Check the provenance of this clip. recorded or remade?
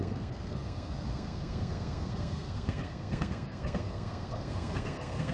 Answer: remade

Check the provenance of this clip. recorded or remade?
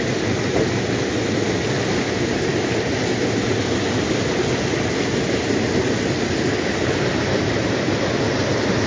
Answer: recorded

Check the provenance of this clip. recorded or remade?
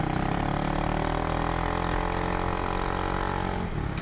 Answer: recorded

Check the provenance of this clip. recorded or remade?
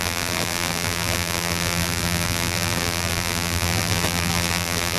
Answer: remade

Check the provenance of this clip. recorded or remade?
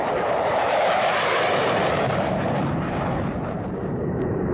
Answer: remade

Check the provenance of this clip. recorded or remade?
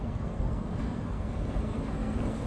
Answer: remade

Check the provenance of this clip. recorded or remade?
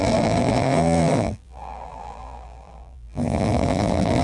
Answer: remade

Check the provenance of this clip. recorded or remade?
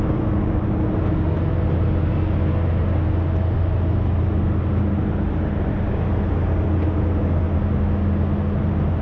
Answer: recorded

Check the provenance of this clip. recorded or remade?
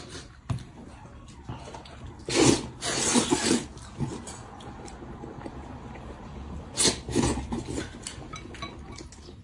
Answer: recorded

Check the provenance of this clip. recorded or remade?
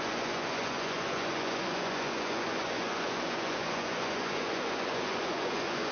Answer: remade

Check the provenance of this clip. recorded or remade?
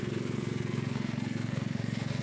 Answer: remade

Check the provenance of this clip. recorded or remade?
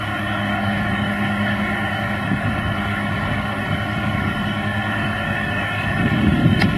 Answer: remade